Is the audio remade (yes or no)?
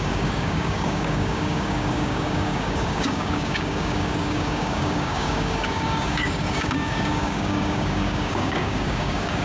yes